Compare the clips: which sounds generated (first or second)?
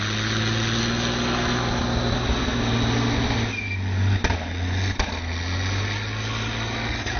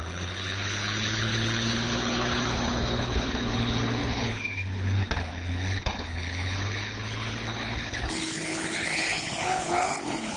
second